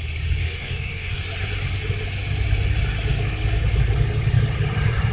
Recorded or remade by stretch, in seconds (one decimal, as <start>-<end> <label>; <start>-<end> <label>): 0.0-0.4 recorded; 0.4-1.2 remade; 1.2-5.1 recorded